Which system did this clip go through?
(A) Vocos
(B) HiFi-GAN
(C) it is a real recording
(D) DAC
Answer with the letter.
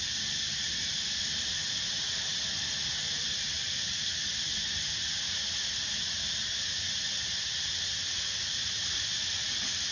C